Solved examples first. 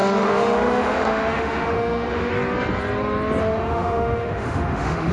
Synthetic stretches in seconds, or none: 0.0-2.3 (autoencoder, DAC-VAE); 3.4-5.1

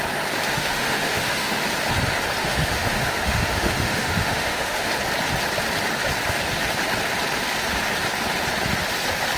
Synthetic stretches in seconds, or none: 0.5-1.7 (autoencoder, DAC-VAE); 2.4-4.9

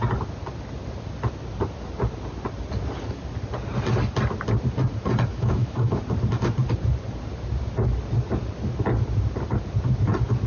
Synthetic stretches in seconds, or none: 5.3-6.0 (autoencoder, DAC-VAE)